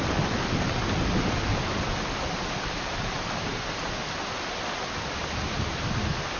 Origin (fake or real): real